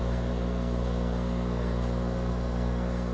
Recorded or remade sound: remade